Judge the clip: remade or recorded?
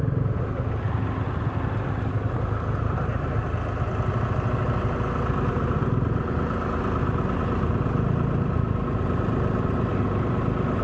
recorded